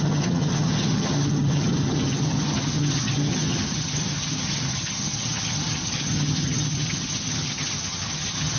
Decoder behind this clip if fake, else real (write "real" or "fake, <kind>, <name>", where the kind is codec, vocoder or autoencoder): fake, vocoder, HiFi-GAN